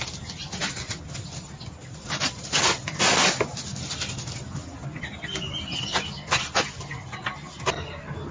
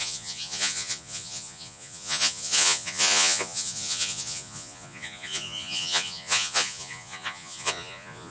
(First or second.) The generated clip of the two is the second